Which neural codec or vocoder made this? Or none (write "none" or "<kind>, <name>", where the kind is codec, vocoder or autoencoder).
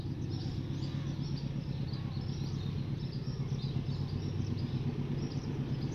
none